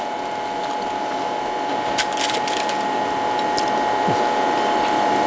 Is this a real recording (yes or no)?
yes